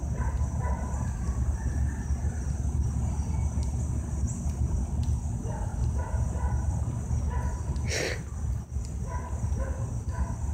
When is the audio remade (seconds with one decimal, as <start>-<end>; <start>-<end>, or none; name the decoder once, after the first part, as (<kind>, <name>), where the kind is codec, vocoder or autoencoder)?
none